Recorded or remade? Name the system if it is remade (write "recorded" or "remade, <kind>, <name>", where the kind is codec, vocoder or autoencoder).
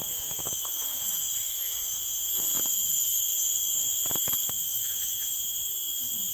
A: remade, autoencoder, DAC-VAE